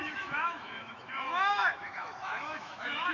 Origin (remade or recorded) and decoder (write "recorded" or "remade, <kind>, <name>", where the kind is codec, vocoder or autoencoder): remade, autoencoder, DAC-VAE